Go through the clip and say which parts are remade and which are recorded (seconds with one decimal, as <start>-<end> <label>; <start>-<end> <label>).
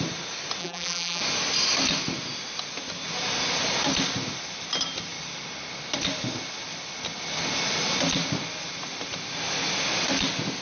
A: 0.0-0.6 recorded; 0.6-1.2 remade; 1.2-10.6 recorded